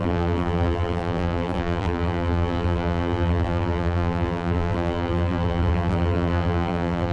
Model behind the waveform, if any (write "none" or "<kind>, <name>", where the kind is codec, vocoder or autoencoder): vocoder, BigVGAN v2